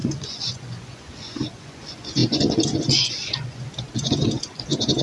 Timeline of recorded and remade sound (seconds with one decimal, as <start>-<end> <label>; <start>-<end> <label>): 0.0-5.0 remade